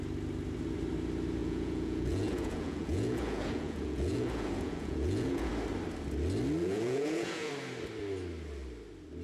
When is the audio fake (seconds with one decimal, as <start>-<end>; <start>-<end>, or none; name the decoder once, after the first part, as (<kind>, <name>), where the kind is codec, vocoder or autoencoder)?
1.4-5.5 (vocoder, Vocos); 6.6-7.5